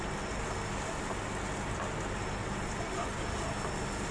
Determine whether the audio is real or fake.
real